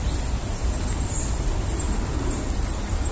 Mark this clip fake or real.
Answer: real